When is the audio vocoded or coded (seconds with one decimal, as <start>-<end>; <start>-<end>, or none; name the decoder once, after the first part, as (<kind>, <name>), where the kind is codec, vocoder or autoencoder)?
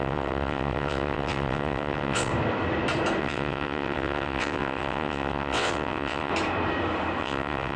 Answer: 0.0-2.3 (vocoder, WaveNeXt); 3.2-6.3; 7.2-7.8